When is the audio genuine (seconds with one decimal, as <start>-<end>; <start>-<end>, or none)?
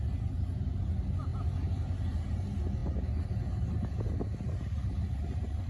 0.0-4.3